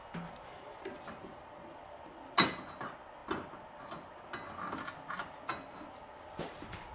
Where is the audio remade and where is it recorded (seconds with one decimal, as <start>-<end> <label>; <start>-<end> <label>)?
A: 0.0-6.9 recorded